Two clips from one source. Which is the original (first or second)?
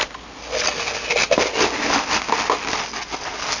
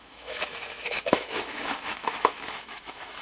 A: first